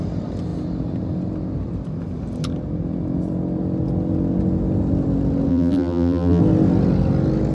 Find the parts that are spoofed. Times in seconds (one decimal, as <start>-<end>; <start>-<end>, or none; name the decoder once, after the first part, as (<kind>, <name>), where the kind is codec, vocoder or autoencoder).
5.5-6.4 (vocoder, BigVGAN v2)

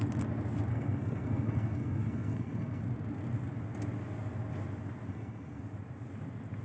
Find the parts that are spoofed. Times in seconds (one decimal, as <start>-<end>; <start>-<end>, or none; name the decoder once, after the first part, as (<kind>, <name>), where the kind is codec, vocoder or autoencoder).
0.7-2.8 (codec, SNAC); 5.1-5.6

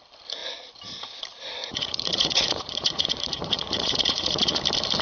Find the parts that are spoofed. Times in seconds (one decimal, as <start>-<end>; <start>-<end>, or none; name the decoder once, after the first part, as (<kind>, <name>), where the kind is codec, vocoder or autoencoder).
1.6-4.6 (vocoder, Vocos)

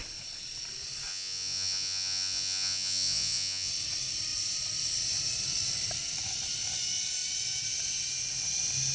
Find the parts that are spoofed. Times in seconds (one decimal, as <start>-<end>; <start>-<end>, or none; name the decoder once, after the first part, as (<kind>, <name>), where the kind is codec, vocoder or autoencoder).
1.1-3.7 (vocoder, Vocos)

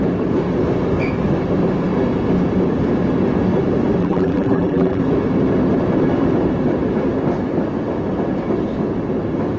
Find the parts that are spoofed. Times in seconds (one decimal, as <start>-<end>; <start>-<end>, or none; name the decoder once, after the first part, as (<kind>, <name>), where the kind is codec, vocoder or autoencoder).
4.0-5.0 (vocoder, BigVGAN v2)

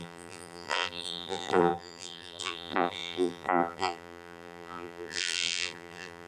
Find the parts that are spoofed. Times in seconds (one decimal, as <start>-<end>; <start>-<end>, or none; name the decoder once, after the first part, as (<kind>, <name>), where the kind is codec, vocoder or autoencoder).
0.0-6.3 (vocoder, BigVGAN v2)